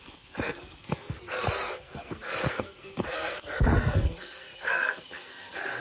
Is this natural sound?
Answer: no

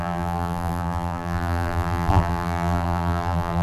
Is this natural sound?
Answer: no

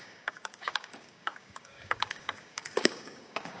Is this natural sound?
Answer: no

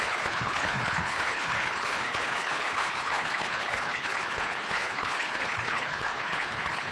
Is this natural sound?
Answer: no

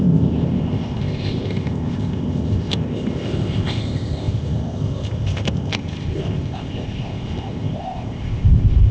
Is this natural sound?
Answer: no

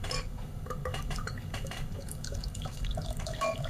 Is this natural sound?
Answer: no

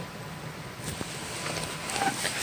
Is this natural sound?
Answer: yes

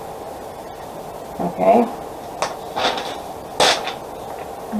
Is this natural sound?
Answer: yes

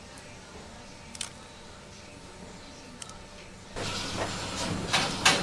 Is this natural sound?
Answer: yes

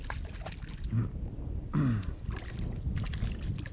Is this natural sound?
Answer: yes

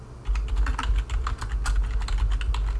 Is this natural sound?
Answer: yes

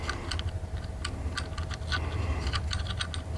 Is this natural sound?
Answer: yes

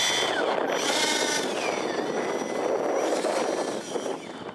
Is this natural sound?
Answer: yes